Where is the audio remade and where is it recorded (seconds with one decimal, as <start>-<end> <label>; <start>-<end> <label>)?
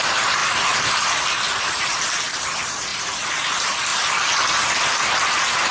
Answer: 0.0-2.9 recorded; 2.9-3.5 remade; 3.5-5.7 recorded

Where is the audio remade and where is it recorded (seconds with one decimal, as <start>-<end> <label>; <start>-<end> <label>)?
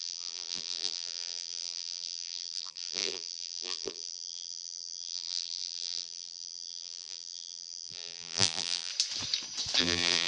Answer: 0.0-8.9 remade; 8.9-9.8 recorded; 9.8-10.3 remade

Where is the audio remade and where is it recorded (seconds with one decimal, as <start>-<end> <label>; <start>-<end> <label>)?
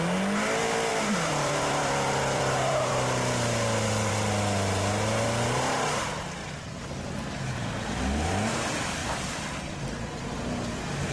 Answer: 0.0-0.9 recorded; 0.9-4.1 remade; 4.1-6.4 recorded; 6.4-7.1 remade; 7.1-9.0 recorded; 9.0-9.8 remade; 9.8-11.1 recorded